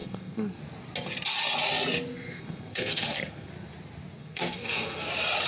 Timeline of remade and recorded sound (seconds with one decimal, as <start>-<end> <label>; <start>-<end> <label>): 0.0-0.6 remade; 0.6-2.1 recorded; 2.1-3.5 remade; 3.5-4.2 recorded; 4.2-5.1 remade; 5.1-5.5 recorded